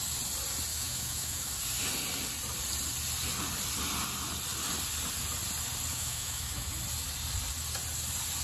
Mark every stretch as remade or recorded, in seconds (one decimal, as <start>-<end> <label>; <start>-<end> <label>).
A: 0.0-0.7 recorded; 0.7-1.5 remade; 1.5-5.9 recorded; 5.9-6.7 remade; 6.7-8.4 recorded